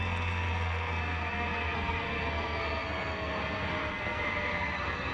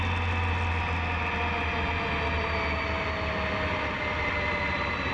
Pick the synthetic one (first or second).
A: first